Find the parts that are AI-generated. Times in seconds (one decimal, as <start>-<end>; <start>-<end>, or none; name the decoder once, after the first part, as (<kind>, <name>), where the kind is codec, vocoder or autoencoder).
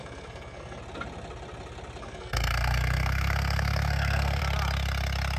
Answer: 0.0-0.8 (codec, SNAC); 2.0-4.4